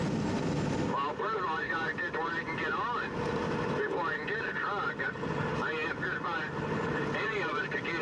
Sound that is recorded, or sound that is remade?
recorded